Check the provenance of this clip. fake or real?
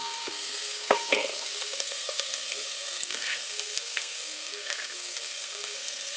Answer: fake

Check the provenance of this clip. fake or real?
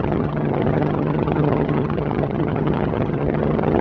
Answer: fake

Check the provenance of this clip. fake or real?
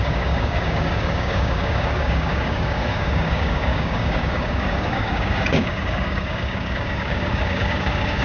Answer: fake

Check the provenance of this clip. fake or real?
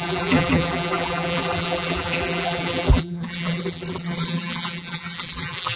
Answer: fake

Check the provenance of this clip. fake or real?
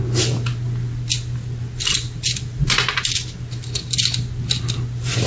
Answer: real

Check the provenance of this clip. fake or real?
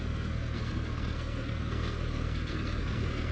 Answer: fake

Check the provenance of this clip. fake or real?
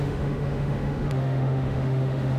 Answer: fake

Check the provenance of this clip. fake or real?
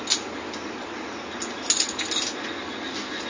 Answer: real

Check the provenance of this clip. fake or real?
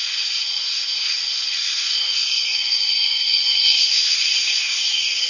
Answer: fake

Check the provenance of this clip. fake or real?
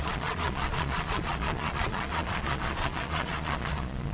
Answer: fake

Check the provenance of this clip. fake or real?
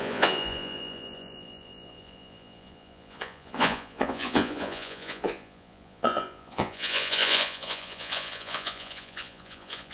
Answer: fake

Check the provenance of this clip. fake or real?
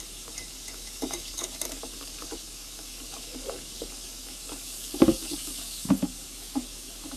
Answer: fake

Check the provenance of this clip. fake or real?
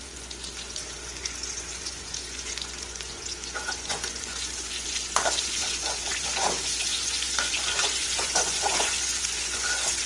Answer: fake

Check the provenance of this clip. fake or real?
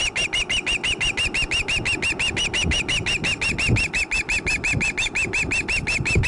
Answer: real